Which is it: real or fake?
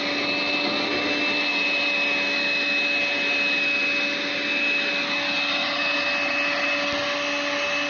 real